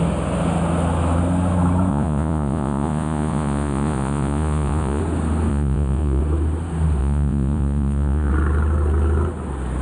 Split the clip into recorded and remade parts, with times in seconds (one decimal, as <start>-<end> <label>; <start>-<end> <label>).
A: 0.0-1.9 recorded; 1.9-5.0 remade; 5.0-5.5 recorded; 5.5-6.2 remade; 6.2-7.0 recorded; 7.0-8.3 remade; 8.3-9.8 recorded